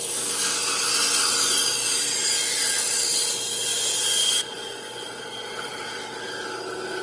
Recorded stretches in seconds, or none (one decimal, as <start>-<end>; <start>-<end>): 0.0-3.7; 5.7-7.0